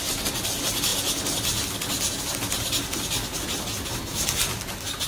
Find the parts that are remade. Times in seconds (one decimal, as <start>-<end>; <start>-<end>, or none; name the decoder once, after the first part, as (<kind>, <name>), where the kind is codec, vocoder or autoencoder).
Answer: none